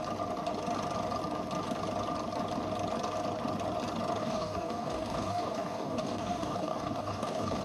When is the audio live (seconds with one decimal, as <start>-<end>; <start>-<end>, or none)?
0.0-4.2